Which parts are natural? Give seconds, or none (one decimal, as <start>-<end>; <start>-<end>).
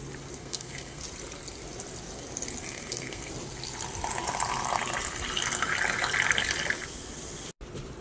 0.0-0.4; 1.0-2.6; 3.3-8.0